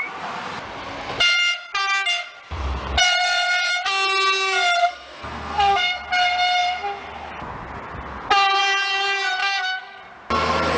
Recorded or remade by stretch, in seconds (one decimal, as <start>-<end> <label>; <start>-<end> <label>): 0.0-4.8 recorded; 4.8-6.0 remade; 6.0-9.4 recorded; 9.4-10.0 remade; 10.0-10.8 recorded